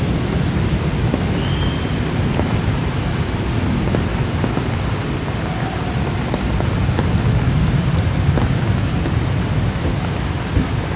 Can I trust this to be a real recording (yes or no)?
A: yes